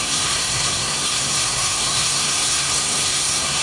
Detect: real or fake fake